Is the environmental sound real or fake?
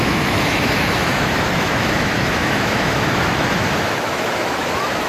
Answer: fake